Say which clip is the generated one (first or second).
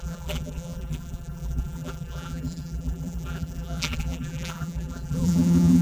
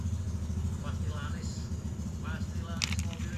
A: first